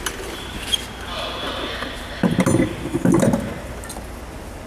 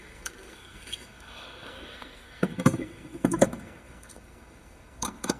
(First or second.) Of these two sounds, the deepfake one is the second